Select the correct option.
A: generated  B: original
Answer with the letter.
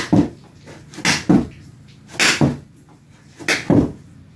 B